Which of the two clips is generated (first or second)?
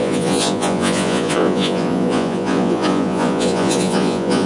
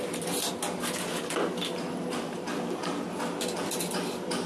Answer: first